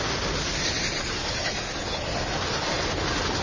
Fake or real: real